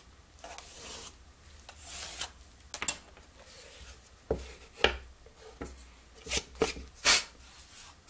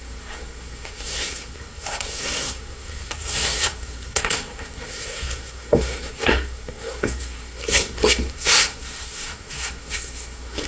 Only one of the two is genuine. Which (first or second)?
first